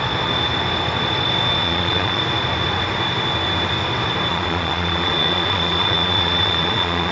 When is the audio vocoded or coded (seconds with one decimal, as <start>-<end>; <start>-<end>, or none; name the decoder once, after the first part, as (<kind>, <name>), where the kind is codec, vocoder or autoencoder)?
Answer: 1.6-2.2 (vocoder, Vocos); 4.3-7.1

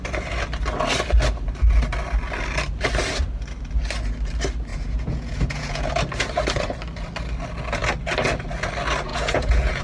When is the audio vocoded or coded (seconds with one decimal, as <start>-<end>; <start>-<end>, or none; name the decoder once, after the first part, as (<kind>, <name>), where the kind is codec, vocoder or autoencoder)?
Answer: 4.7-5.9 (vocoder, Vocos); 9.1-9.8

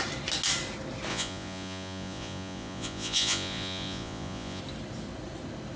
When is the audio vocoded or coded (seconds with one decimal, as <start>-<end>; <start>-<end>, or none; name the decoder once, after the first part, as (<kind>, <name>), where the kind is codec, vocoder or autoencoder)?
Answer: 1.1-4.6 (vocoder, Vocos)

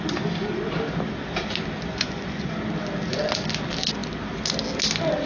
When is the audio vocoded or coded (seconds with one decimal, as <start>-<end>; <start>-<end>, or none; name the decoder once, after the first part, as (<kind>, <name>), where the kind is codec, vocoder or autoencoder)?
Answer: 1.9-2.5 (vocoder, Vocos)

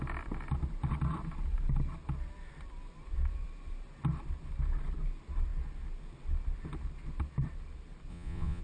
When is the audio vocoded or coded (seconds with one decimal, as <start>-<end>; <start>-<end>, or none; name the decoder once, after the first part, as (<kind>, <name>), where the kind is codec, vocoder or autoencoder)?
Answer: 8.1-8.6 (vocoder, Vocos)